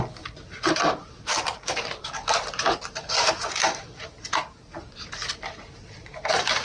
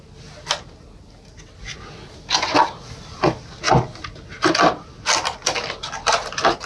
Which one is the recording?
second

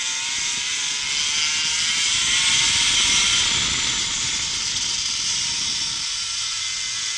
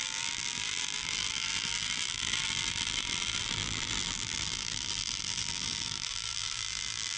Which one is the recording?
first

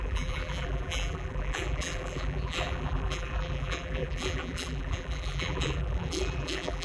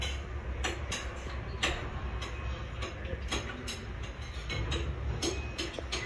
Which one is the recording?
second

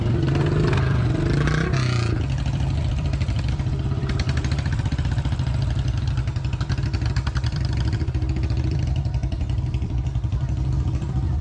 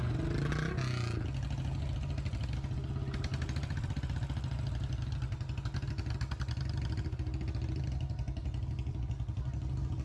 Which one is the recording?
second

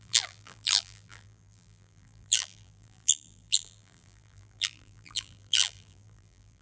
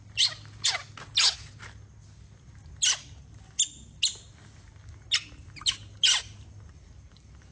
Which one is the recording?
second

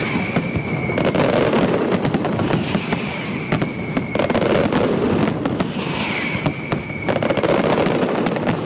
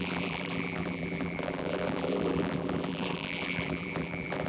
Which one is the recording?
first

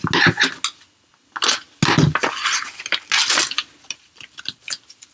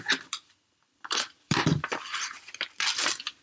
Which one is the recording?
first